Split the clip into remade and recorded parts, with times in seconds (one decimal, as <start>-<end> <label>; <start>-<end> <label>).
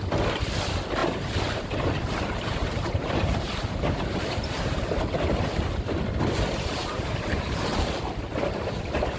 0.0-1.0 recorded; 1.0-5.0 remade; 5.0-6.8 recorded; 6.8-8.0 remade; 8.0-9.2 recorded